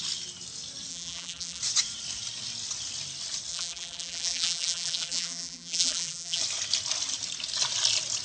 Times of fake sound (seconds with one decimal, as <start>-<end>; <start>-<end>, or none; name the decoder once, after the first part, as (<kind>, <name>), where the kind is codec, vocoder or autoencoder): 0.9-1.6 (vocoder, BigVGAN v2); 3.5-6.4

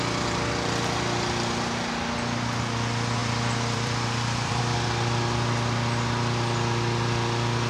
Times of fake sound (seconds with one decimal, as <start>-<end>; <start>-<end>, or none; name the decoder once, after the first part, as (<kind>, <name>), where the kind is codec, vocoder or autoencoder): 3.2-4.6 (vocoder, BigVGAN v2)

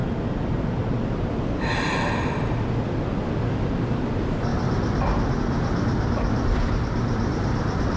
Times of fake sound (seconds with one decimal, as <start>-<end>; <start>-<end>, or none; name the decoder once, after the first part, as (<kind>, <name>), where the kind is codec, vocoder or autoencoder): 0.0-4.5 (vocoder, BigVGAN v2); 5.4-8.0

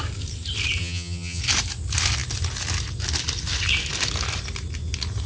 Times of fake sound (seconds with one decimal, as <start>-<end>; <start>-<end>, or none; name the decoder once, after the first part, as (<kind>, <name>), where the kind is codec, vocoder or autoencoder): 0.8-1.4 (vocoder, HiFi-GAN)

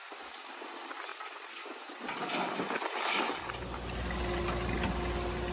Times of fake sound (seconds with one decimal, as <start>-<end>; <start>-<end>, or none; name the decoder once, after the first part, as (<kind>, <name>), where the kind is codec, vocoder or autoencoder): none

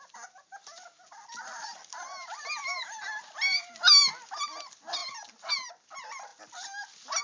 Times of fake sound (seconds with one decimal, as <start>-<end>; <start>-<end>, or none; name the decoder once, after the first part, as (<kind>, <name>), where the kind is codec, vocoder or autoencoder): none

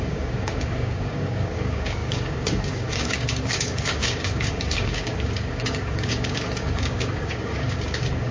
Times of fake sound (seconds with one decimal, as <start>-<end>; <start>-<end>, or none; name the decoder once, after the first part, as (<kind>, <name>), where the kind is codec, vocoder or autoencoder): 0.0-8.3 (codec, DAC)